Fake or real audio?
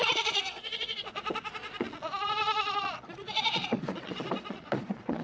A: fake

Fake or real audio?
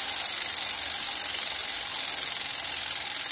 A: real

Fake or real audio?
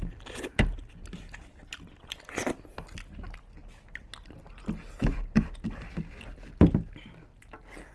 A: real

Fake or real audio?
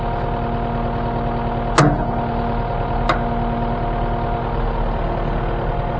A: real